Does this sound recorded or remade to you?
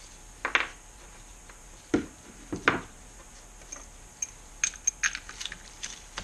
recorded